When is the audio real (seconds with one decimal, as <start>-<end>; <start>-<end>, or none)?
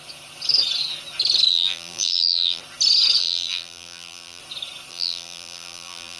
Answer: 0.0-1.5; 2.6-3.2; 4.4-4.9